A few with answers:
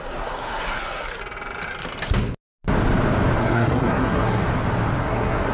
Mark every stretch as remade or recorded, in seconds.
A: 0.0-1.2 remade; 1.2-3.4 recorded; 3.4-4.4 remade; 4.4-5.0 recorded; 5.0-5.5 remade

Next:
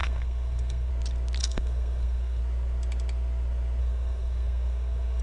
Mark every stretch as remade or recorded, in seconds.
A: 0.0-0.9 remade; 0.9-1.4 recorded; 1.4-2.4 remade; 2.4-3.8 recorded; 3.8-5.2 remade

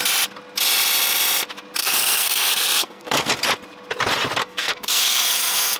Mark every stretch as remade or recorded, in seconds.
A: 0.0-1.8 recorded; 1.8-3.3 remade; 3.3-4.4 recorded; 4.4-5.8 remade

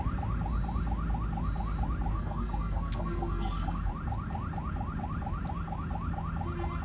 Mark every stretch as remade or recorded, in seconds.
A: 0.0-2.1 recorded; 2.1-3.9 remade; 3.9-6.8 recorded